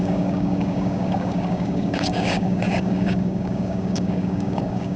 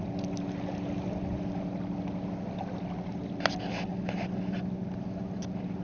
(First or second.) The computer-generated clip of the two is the first